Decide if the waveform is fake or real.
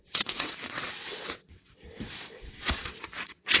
fake